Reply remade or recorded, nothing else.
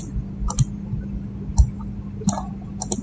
recorded